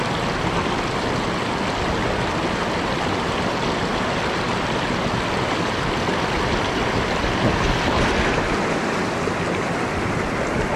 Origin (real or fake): real